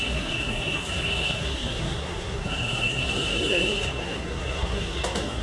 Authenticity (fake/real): fake